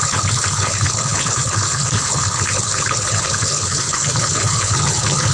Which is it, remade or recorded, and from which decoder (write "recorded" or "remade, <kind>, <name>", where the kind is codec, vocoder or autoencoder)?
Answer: remade, codec, HILCodec